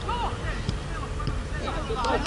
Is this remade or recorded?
recorded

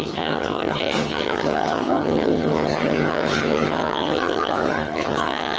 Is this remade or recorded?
remade